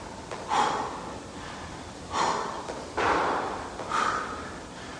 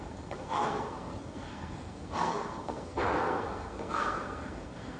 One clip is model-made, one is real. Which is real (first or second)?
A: first